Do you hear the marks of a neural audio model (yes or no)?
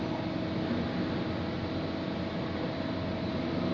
no